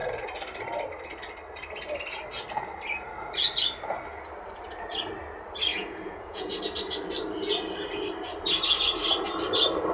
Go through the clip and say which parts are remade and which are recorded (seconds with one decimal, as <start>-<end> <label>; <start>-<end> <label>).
0.0-5.7 recorded; 5.7-6.6 remade; 6.6-9.9 recorded